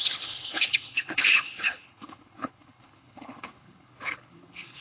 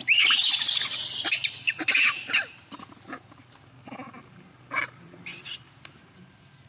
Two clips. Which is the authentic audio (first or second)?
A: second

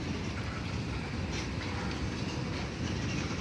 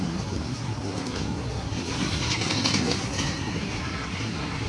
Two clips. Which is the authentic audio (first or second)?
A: first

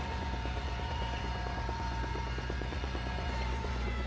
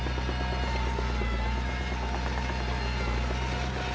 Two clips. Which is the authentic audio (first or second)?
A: second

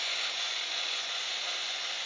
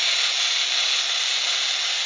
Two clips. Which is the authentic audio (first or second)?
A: second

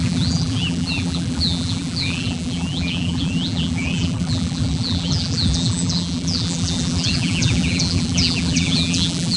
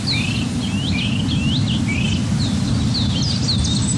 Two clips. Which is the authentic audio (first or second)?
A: second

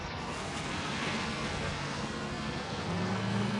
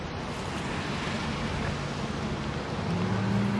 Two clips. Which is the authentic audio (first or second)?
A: second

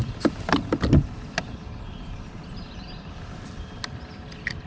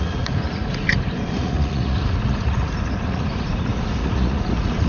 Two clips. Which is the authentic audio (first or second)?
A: first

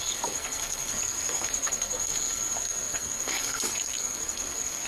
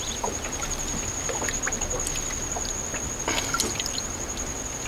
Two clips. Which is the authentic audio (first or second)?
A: second